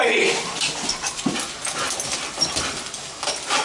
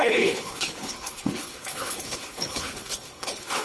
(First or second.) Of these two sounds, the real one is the first